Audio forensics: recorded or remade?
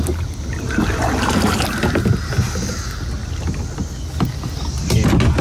recorded